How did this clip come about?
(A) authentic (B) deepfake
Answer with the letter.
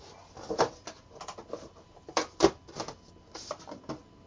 A